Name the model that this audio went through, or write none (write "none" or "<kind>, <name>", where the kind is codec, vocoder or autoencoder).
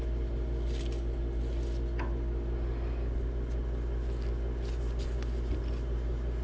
none